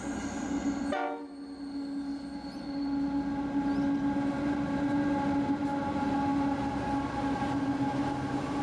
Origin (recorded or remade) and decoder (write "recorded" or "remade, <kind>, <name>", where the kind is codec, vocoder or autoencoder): recorded